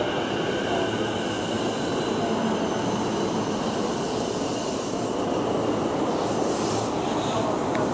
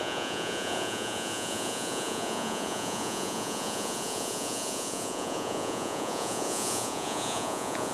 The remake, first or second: second